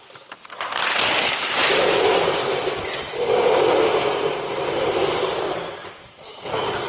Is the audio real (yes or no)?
yes